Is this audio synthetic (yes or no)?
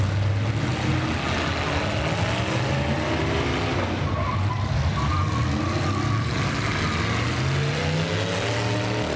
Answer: no